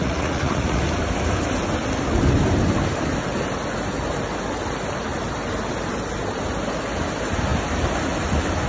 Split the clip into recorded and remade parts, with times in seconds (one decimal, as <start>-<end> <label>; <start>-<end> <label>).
0.0-0.8 remade; 0.8-8.7 recorded